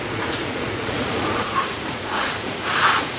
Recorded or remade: remade